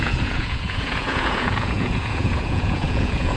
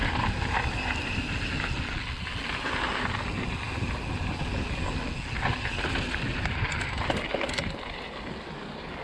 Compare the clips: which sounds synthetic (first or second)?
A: first